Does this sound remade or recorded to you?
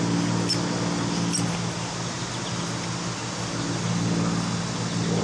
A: recorded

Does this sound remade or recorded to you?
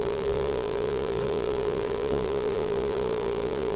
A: remade